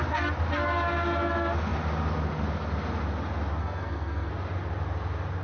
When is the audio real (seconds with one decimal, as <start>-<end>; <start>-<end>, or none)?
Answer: 0.0-3.6; 4.3-5.4

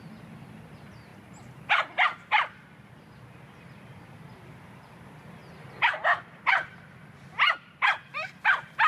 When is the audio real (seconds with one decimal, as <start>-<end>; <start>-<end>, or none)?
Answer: 0.0-8.9

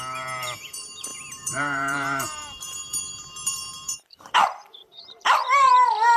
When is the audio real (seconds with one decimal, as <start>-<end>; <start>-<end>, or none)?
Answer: none

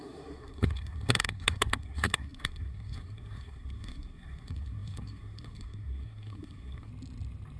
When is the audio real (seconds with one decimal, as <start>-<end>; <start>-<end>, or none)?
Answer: 6.9-7.6